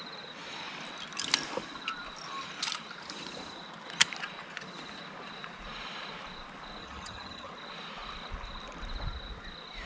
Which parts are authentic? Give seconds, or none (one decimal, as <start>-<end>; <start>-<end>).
0.0-6.8; 7.5-9.9